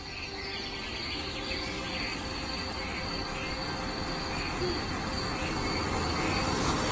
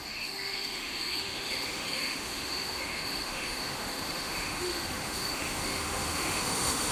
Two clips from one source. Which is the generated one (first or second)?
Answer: second